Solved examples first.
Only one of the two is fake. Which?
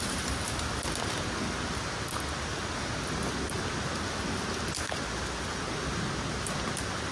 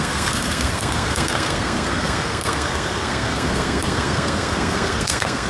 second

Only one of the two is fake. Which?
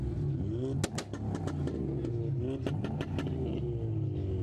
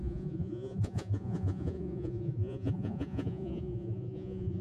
second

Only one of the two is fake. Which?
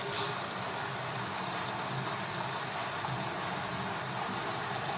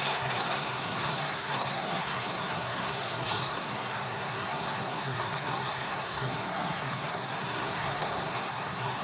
second